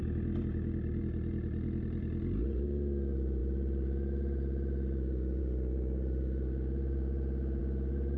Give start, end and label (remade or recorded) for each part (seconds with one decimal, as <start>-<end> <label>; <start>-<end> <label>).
0.0-8.2 recorded

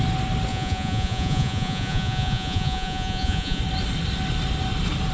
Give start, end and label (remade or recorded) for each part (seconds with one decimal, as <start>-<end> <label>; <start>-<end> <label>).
0.0-0.5 recorded; 0.5-3.6 remade; 3.6-5.1 recorded

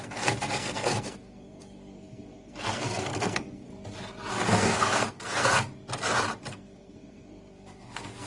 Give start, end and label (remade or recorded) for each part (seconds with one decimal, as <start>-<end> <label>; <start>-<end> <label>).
0.0-3.7 remade; 3.7-4.3 recorded; 4.3-5.5 remade; 5.5-6.5 recorded; 6.5-8.3 remade

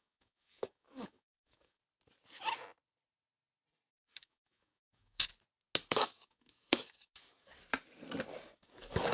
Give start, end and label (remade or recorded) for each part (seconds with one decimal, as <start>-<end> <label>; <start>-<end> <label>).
0.0-1.8 remade; 1.8-3.9 recorded; 3.9-5.3 remade; 5.3-5.9 recorded; 5.9-7.5 remade; 7.5-8.6 recorded; 8.6-9.1 remade